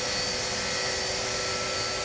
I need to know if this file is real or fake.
real